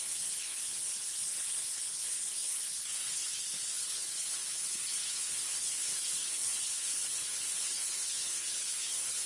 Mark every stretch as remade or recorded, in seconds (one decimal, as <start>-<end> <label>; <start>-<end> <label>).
0.0-9.3 remade